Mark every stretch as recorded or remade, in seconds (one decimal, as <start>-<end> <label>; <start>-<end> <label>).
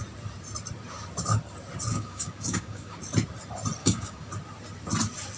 0.0-1.9 recorded; 1.9-3.0 remade; 3.0-3.8 recorded; 3.8-4.3 remade; 4.3-5.4 recorded